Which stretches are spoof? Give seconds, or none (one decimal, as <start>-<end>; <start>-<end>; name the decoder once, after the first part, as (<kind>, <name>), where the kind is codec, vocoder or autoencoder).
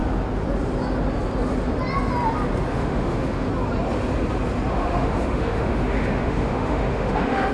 2.7-3.5 (autoencoder, DAC-VAE); 4.7-7.5